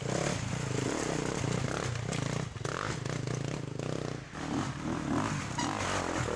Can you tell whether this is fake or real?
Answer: real